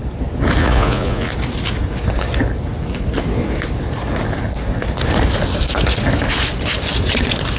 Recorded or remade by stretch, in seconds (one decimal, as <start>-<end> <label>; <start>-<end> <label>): 0.0-0.6 recorded; 0.6-1.3 remade; 1.3-7.6 recorded

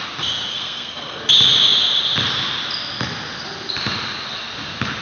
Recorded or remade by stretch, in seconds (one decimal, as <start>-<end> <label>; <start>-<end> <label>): 0.0-0.5 recorded; 0.5-1.2 remade; 1.2-5.0 recorded